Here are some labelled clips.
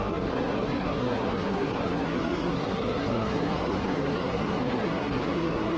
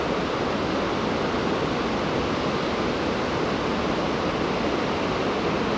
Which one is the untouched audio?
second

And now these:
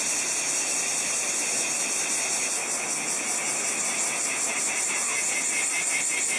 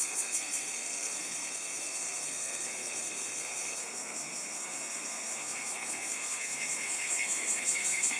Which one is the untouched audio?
first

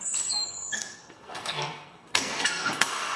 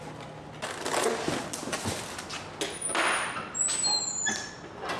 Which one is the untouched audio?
second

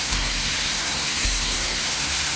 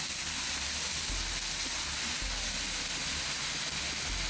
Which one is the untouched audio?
second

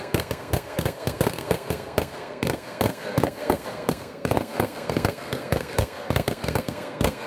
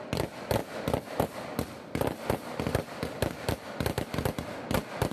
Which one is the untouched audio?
second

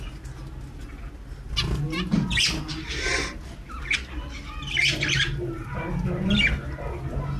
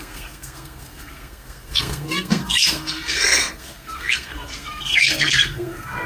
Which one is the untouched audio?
first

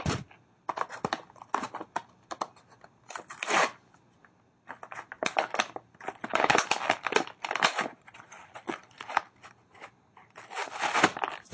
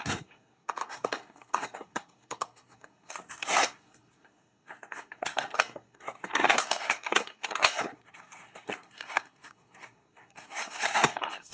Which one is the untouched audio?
first